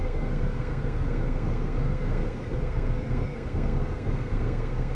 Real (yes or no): no